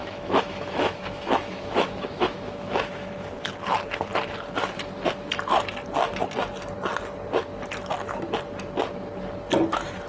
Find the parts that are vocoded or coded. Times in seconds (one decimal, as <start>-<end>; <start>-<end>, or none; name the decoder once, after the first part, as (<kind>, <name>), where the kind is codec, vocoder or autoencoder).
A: 0.0-3.3 (autoencoder, DAC-VAE)